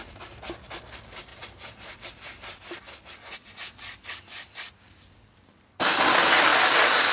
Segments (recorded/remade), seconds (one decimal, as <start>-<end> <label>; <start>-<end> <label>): 0.0-7.1 recorded